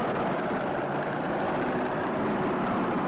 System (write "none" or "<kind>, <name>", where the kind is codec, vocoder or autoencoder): none